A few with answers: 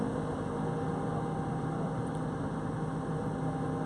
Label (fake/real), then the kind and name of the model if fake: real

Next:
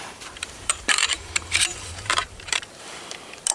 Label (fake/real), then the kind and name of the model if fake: fake, vocoder, BigVGAN v2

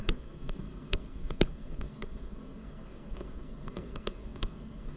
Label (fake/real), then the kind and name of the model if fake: fake, codec, SNAC